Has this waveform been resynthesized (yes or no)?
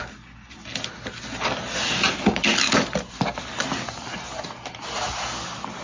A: no